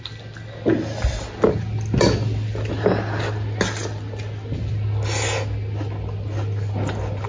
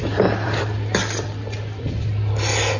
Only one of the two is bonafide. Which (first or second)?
first